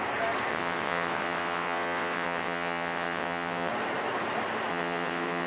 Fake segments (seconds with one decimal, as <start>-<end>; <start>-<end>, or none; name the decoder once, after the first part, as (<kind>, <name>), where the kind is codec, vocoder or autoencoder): 0.5-3.7 (vocoder, WaveNeXt); 4.7-5.5